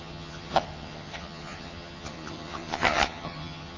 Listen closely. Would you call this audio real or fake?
fake